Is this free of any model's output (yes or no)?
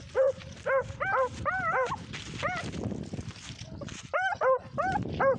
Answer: yes